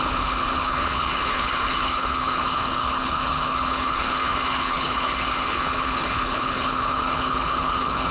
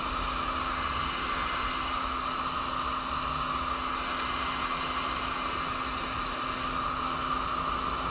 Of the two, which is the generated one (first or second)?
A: first